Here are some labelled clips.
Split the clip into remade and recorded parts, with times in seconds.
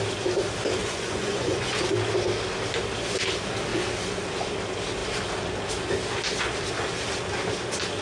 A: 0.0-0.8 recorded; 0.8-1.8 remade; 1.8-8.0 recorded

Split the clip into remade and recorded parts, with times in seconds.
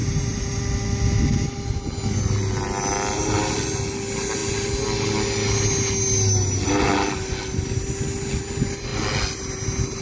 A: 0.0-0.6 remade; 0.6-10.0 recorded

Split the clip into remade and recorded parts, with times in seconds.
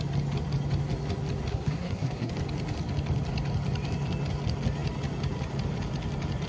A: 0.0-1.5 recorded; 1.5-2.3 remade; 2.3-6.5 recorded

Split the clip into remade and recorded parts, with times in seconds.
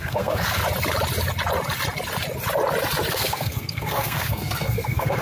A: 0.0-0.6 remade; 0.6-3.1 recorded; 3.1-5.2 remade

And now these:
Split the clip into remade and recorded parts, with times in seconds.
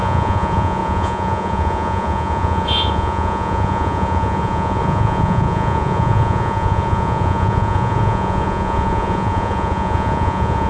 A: 0.0-10.7 remade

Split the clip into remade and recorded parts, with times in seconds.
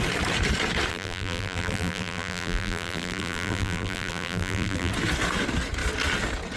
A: 0.0-0.9 recorded; 0.9-4.9 remade; 4.9-6.6 recorded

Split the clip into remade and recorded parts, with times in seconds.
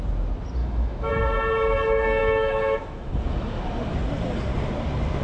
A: 0.0-0.6 recorded; 0.6-1.1 remade; 1.1-2.2 recorded; 2.2-3.1 remade; 3.1-5.2 recorded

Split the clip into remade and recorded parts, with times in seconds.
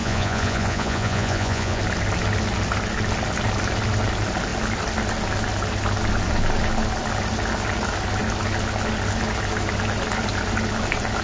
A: 0.0-1.8 remade; 1.8-11.2 recorded